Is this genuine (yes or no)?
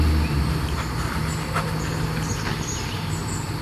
yes